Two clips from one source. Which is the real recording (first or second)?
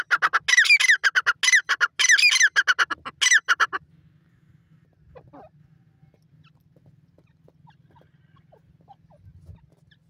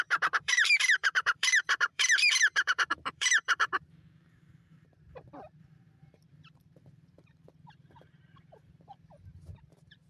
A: first